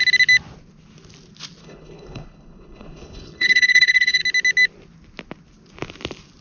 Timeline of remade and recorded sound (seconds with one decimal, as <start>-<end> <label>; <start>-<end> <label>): 0.0-1.6 recorded; 1.6-4.2 remade; 4.2-6.4 recorded